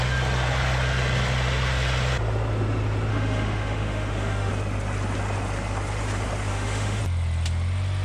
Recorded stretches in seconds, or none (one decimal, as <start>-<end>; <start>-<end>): 0.0-3.1; 4.5-6.5; 7.0-8.0